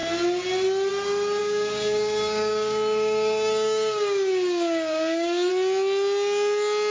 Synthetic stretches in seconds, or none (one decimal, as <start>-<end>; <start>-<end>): 1.4-5.5